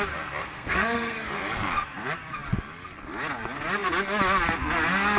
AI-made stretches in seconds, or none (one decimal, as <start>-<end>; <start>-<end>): 0.4-1.3